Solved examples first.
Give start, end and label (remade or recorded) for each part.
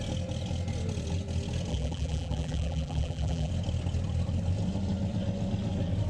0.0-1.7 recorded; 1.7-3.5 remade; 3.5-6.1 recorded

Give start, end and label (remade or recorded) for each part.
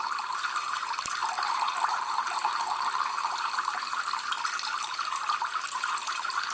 0.0-6.5 remade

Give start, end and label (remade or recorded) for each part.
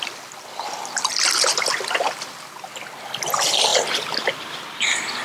0.0-1.1 recorded; 1.1-1.8 remade; 1.8-5.2 recorded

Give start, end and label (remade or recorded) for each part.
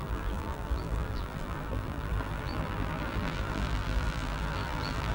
0.0-5.1 remade